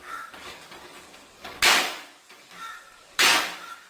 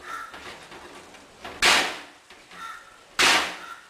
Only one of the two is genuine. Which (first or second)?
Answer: second